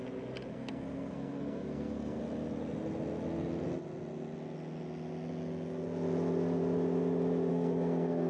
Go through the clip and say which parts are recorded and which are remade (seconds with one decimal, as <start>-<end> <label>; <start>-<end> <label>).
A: 0.0-0.5 recorded; 0.5-2.2 remade; 2.2-7.5 recorded; 7.5-8.3 remade